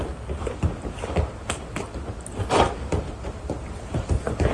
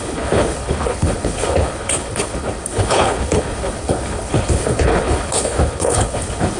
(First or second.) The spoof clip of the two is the second